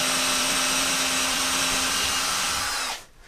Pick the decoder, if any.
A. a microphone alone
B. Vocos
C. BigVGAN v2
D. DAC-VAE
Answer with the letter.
C